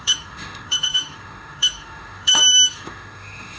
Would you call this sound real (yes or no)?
no